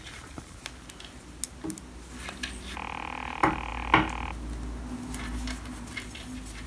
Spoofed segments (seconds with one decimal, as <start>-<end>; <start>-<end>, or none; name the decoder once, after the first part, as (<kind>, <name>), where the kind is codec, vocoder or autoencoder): none